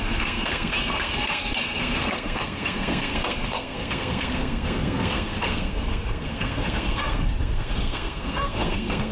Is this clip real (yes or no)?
no